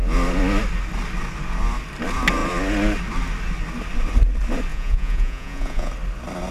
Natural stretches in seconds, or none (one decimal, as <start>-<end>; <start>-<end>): 0.0-4.7; 5.9-6.5